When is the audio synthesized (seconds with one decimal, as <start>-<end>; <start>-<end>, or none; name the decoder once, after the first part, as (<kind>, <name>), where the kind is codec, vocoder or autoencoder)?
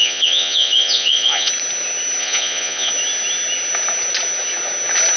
0.0-1.5 (vocoder, Vocos); 2.2-2.9